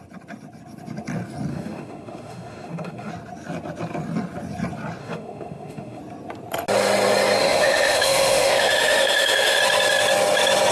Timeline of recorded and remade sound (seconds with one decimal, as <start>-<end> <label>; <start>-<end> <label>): 0.0-1.5 recorded; 1.5-3.1 remade; 3.1-5.0 recorded; 5.0-6.0 remade; 6.0-7.4 recorded; 7.4-9.6 remade; 9.6-10.7 recorded